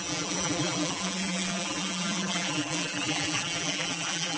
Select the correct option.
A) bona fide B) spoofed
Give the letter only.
B